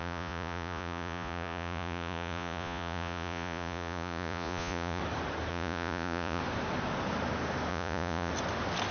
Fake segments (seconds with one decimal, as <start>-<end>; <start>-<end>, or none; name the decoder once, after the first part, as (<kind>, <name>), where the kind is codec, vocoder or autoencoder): 0.0-5.0 (vocoder, Vocos); 5.5-6.4; 7.7-8.3